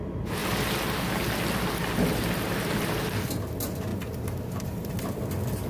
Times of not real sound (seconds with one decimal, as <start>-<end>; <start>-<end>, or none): 3.9-4.9